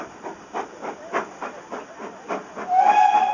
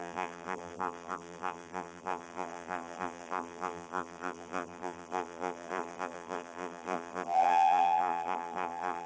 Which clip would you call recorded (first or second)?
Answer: first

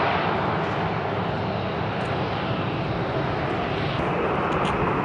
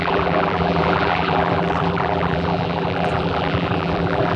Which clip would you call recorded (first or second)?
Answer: first